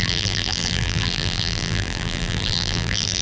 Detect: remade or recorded remade